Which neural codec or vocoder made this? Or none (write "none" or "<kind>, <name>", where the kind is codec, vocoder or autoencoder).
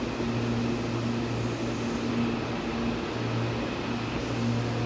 none